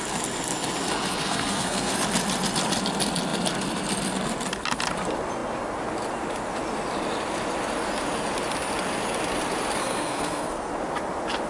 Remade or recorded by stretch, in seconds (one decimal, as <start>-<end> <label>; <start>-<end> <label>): 0.0-1.2 recorded; 1.2-1.9 remade; 1.9-9.8 recorded; 9.8-10.7 remade; 10.7-11.5 recorded